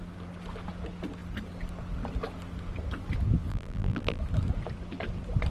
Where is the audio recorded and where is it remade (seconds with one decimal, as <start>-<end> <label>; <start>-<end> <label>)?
0.0-3.5 recorded; 3.5-4.2 remade; 4.2-5.5 recorded